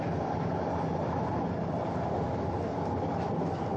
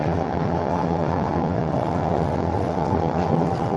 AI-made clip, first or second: second